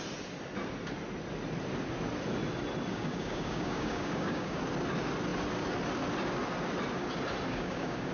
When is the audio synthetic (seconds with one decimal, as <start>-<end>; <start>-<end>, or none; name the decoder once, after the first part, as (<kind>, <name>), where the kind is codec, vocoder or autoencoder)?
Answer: 2.9-4.6 (codec, DAC); 7.5-8.1